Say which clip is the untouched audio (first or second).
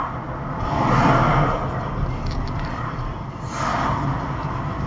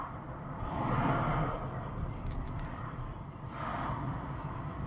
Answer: first